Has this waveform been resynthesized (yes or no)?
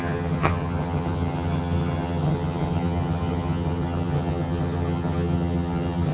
yes